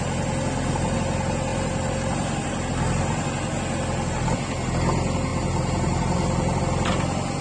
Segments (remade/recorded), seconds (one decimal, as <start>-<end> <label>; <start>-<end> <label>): 0.0-1.5 recorded; 1.5-2.7 remade; 2.7-5.3 recorded; 5.3-6.6 remade; 6.6-7.4 recorded